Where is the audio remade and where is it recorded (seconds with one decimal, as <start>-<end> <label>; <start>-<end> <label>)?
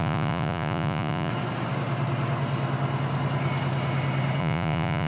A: 0.0-1.3 remade; 1.3-4.4 recorded; 4.4-5.1 remade